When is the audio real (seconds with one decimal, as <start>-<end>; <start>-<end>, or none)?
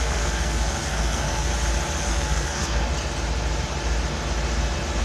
1.5-2.1; 2.9-5.0